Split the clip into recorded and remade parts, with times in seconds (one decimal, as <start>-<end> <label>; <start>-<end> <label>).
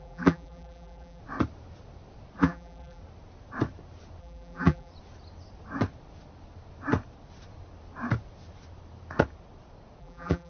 0.0-1.2 remade; 1.2-2.4 recorded; 2.4-3.0 remade; 3.0-4.2 recorded; 4.2-4.9 remade; 4.9-10.0 recorded; 10.0-10.5 remade